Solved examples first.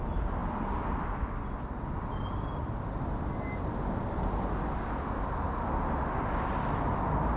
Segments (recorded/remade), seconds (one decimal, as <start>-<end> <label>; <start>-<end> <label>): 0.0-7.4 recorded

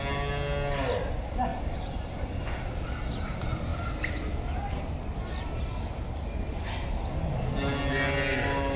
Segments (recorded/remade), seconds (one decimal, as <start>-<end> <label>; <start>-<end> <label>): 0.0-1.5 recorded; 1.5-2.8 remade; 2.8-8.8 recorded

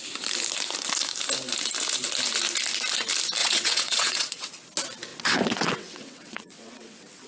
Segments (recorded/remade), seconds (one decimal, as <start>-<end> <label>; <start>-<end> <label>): 0.0-3.4 recorded; 3.4-4.5 remade; 4.5-5.1 recorded; 5.1-7.3 remade

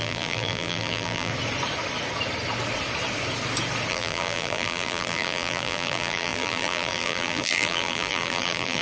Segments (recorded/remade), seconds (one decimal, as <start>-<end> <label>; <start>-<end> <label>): 0.0-1.3 remade; 1.3-3.9 recorded; 3.9-8.8 remade